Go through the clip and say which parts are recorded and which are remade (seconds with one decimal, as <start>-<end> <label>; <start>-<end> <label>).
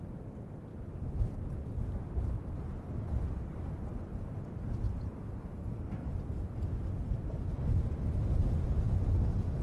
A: 0.0-5.6 recorded; 5.6-6.1 remade; 6.1-9.6 recorded